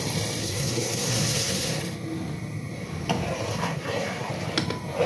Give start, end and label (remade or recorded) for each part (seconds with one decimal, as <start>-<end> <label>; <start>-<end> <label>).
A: 0.0-0.4 recorded; 0.4-1.8 remade; 1.8-3.5 recorded; 3.5-4.3 remade; 4.3-5.1 recorded